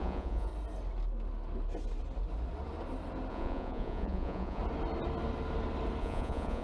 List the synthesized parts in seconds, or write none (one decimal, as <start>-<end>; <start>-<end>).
0.0-0.5; 3.3-4.6; 6.0-6.6